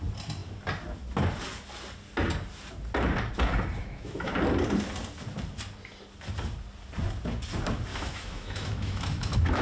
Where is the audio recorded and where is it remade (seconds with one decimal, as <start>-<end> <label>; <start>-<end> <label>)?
0.0-3.8 recorded; 3.8-4.3 remade; 4.3-7.9 recorded; 7.9-9.6 remade